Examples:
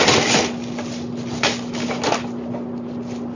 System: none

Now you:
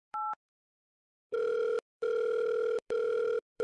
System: autoencoder, DAC-VAE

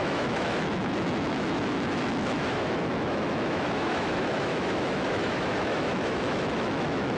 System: autoencoder, DAC-VAE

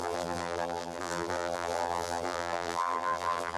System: vocoder, BigVGAN v2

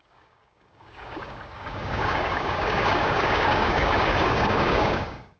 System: codec, DAC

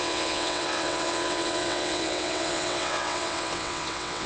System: vocoder, WaveNeXt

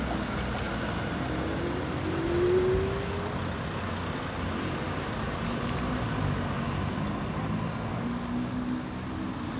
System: none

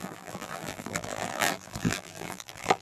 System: vocoder, BigVGAN v2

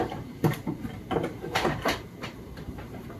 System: vocoder, BigVGAN v2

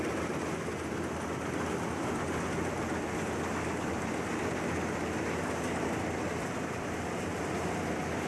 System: none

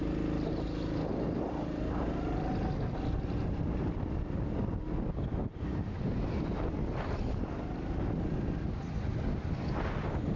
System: none